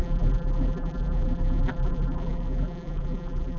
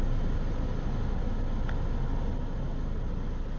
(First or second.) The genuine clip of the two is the second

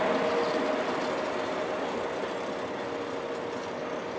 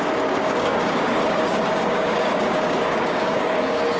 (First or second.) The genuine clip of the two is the first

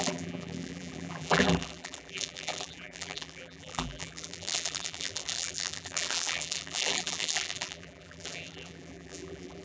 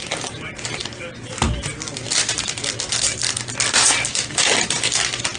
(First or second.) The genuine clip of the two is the second